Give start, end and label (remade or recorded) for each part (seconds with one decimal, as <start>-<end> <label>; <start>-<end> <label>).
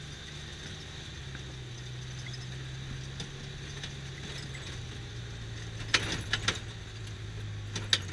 0.0-8.1 recorded